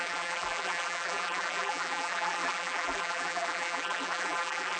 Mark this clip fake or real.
fake